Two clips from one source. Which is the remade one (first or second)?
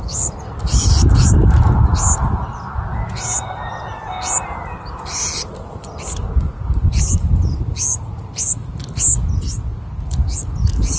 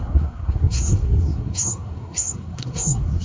second